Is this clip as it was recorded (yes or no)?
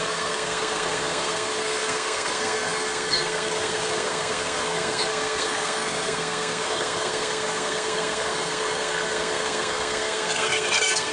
no